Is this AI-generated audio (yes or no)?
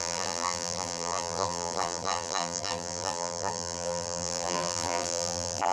yes